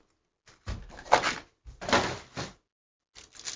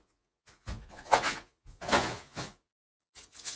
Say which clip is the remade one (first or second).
second